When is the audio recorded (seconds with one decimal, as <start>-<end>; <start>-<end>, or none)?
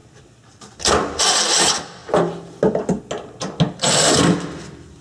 1.2-5.0